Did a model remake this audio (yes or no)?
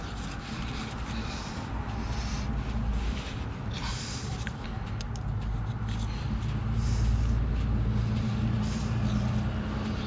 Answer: no